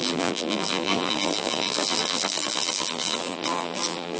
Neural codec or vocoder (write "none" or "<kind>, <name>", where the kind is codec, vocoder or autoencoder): vocoder, BigVGAN v2